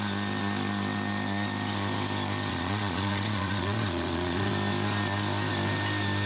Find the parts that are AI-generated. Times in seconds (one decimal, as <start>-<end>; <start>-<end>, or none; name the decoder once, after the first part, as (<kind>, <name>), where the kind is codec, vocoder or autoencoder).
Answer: 2.5-4.5 (vocoder, Vocos)